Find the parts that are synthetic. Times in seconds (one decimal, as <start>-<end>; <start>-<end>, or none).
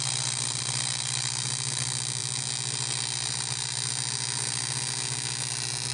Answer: none